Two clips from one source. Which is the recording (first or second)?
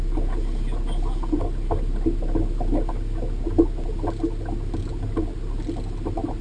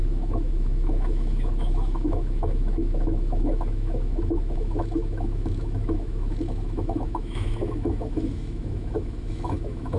first